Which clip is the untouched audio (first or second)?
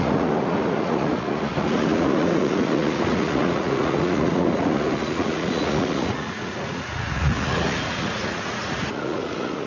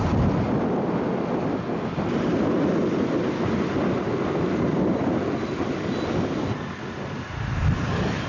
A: second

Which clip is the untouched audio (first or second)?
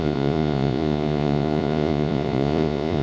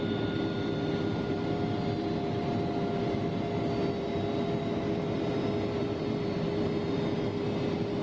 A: second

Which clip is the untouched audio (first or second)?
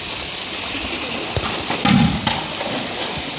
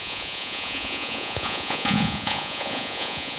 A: first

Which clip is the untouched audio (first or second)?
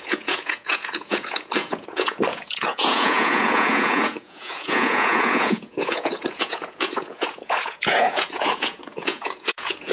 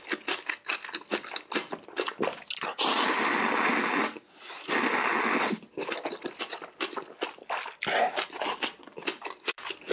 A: second